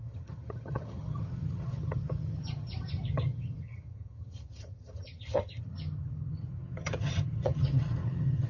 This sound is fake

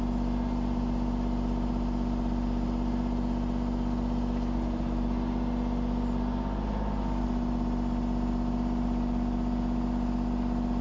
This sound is real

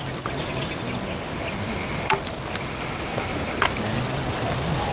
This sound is real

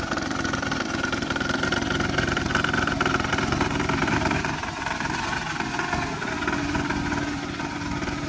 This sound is real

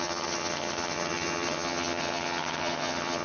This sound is fake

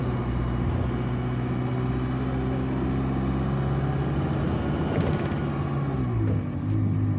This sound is real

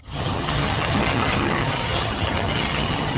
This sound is fake